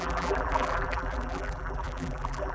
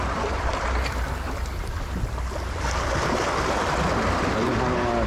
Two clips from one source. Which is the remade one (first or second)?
first